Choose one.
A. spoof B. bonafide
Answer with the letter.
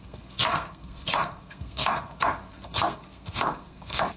A